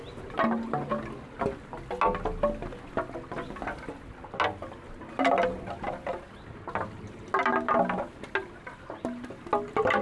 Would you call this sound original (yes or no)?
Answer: yes